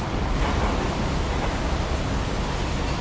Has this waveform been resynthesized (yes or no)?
no